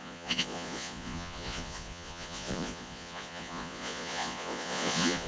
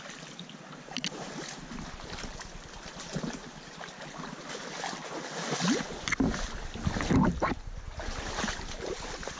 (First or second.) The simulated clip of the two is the first